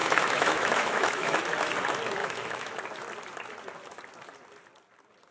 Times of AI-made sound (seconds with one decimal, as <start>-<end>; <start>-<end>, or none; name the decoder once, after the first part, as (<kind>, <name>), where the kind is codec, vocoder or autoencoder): 0.0-1.4 (autoencoder, DAC-VAE); 2.2-2.7